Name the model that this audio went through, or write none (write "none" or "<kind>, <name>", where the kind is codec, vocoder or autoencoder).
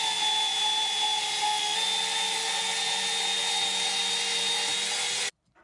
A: none